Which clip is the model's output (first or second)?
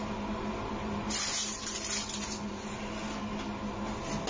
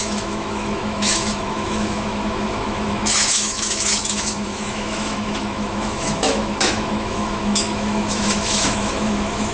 second